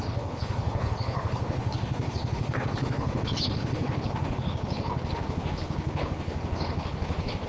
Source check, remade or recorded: remade